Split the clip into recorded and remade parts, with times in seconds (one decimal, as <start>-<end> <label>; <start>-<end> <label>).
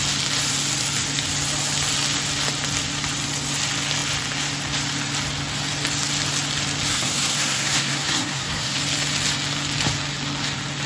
0.0-6.9 recorded; 6.9-8.8 remade; 8.8-10.9 recorded